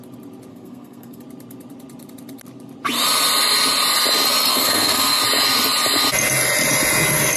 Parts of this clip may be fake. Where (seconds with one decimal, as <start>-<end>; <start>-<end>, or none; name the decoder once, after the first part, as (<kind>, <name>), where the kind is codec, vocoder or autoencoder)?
0.5-1.2 (codec, SNAC); 4.5-5.2